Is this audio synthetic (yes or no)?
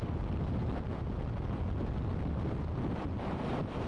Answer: no